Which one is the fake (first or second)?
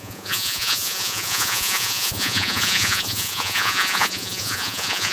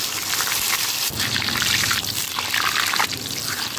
first